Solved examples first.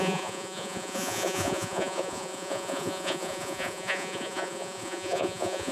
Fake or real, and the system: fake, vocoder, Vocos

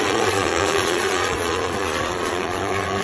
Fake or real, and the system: fake, vocoder, Vocos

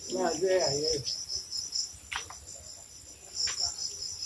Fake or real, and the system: real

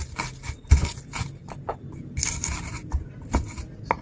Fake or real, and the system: real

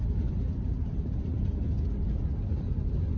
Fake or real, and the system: real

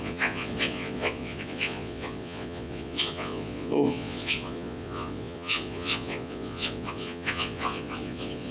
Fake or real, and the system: fake, vocoder, Vocos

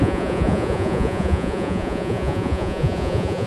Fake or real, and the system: fake, vocoder, Vocos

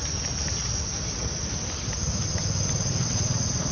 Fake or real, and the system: real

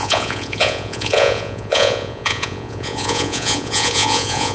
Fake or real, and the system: fake, vocoder, Vocos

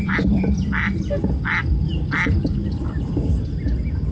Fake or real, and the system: real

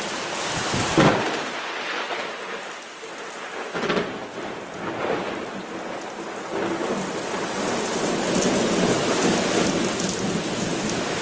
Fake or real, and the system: real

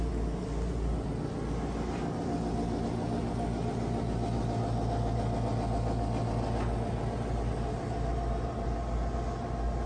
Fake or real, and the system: real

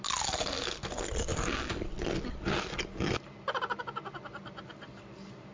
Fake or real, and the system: real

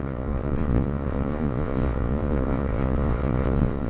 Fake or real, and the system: fake, vocoder, Vocos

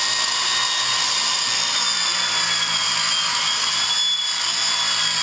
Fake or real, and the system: real